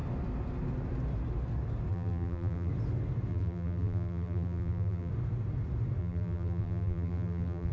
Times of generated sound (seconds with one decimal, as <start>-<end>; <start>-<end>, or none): 1.9-2.7; 3.3-5.1; 6.0-7.7